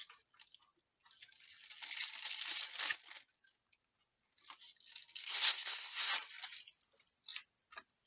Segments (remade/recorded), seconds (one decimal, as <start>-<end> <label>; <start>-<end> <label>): 0.0-5.2 recorded; 5.2-6.1 remade; 6.1-8.1 recorded